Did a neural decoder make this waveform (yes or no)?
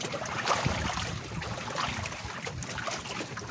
no